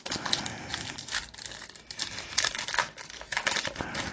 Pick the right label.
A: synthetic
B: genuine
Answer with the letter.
B